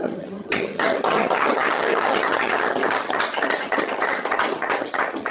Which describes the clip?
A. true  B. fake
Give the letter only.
B